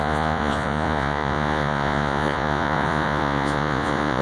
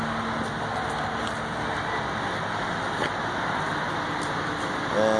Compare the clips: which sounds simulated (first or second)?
first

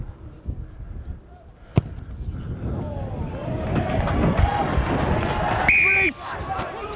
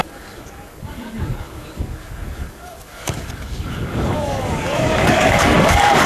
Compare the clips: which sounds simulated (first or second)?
second